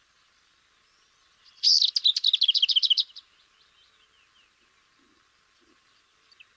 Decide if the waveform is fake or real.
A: real